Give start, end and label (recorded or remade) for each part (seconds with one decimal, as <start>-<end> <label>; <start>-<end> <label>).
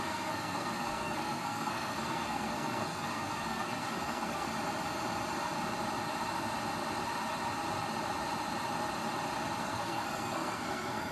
0.0-4.5 remade; 4.5-9.6 recorded; 9.6-11.1 remade